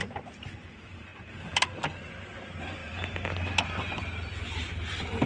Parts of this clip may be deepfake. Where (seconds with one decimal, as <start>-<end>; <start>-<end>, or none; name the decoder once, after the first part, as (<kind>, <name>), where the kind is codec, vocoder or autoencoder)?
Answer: none